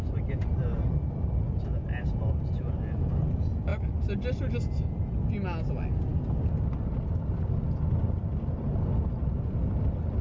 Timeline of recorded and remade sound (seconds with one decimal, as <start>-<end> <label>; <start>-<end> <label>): 0.0-10.2 recorded